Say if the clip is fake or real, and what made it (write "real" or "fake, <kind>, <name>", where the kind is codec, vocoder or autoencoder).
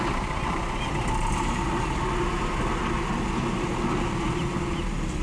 real